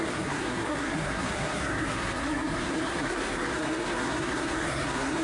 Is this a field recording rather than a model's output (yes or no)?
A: no